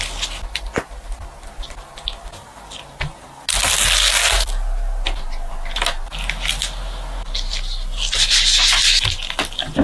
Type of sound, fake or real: real